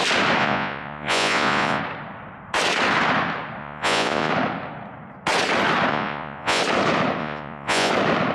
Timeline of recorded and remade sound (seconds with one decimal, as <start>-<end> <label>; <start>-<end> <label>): 0.0-0.4 recorded; 0.4-1.8 remade; 1.8-3.6 recorded; 3.6-4.3 remade; 4.3-5.9 recorded; 5.9-6.6 remade; 6.6-7.2 recorded; 7.2-7.9 remade; 7.9-8.3 recorded